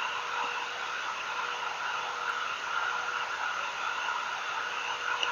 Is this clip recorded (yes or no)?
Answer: yes